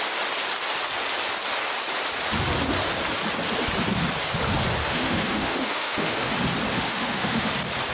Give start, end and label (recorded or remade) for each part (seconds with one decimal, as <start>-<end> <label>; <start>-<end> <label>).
0.0-4.8 recorded; 4.8-6.3 remade; 6.3-6.7 recorded; 6.7-7.5 remade; 7.5-7.9 recorded